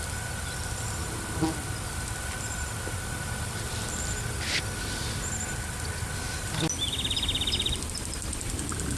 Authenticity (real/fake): real